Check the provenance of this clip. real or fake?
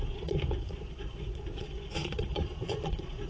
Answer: fake